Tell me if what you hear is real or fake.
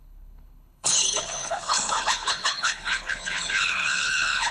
fake